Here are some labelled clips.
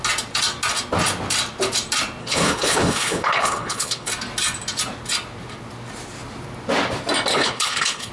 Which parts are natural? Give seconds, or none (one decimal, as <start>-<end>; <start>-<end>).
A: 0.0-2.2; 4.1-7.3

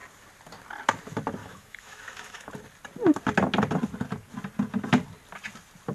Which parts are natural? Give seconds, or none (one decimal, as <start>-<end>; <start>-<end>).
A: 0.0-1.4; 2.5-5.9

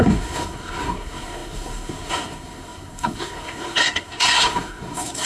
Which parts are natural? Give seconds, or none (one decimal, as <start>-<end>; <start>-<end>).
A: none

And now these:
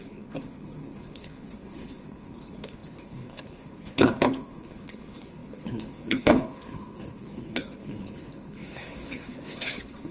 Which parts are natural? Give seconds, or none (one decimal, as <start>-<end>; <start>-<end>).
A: none

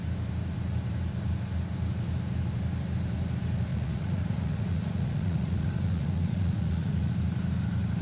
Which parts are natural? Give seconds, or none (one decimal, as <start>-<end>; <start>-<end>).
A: 0.0-3.7; 7.1-8.0

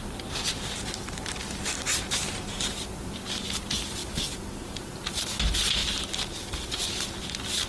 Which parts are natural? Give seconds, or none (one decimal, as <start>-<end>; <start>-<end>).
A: 0.0-4.0; 4.9-7.7